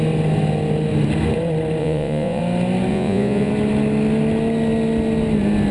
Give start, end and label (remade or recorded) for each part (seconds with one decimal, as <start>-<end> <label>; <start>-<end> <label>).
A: 0.0-1.8 recorded; 1.8-2.4 remade; 2.4-2.9 recorded; 2.9-3.5 remade; 3.5-5.7 recorded